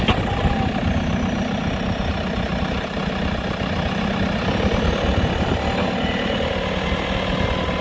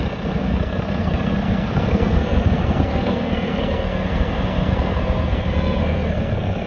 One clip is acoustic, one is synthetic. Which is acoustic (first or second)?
first